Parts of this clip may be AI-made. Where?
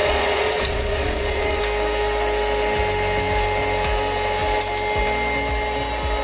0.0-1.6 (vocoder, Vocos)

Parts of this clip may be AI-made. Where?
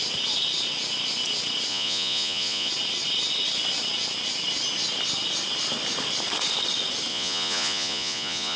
1.7-2.7 (vocoder, Vocos); 7.1-8.6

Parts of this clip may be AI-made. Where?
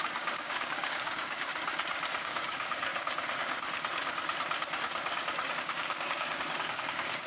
0.0-1.5 (codec, DAC); 2.2-2.9; 5.5-7.3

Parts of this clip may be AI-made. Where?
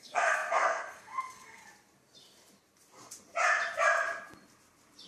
0.0-1.6 (codec, SNAC)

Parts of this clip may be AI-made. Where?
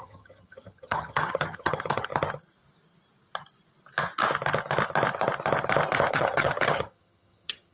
0.0-2.1 (vocoder, HiFi-GAN); 6.1-7.7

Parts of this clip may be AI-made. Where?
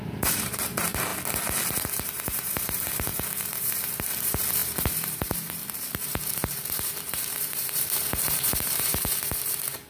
0.0-1.1 (vocoder, BigVGAN v2); 1.7-9.9